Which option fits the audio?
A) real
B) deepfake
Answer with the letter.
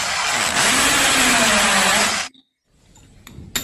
A